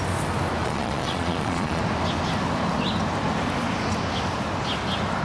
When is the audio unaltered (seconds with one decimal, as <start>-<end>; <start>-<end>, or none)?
0.0-0.6; 1.8-5.2